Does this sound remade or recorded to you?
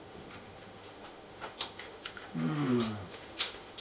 remade